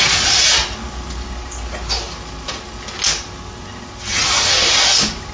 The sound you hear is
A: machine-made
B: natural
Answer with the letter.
B